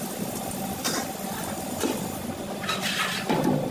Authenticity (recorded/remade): recorded